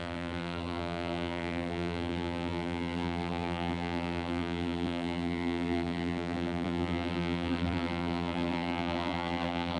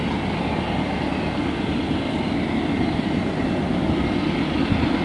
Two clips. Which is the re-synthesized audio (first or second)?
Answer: first